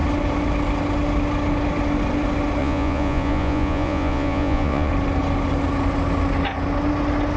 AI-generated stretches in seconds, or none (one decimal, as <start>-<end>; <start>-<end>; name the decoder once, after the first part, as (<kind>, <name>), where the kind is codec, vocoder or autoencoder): 2.6-4.9 (vocoder, Vocos)